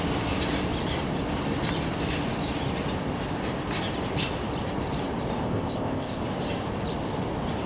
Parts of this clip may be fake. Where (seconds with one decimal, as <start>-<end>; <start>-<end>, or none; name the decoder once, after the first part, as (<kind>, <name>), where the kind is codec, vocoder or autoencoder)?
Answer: 5.4-6.2 (codec, ZipCodec)

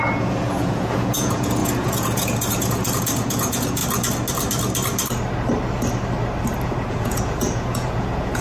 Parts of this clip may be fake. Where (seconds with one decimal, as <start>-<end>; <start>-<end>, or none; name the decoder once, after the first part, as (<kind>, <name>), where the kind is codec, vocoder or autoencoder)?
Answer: 0.0-3.8 (vocoder, Vocos); 6.9-8.4

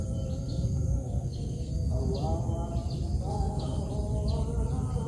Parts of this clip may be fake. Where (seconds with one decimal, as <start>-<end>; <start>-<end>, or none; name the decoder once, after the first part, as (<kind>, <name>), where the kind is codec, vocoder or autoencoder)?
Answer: 0.4-2.0 (codec, SNAC); 3.3-3.8

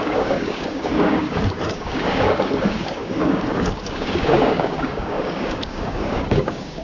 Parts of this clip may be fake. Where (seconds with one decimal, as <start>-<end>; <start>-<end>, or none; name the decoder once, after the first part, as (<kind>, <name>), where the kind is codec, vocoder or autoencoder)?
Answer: 0.0-6.8 (codec, DAC)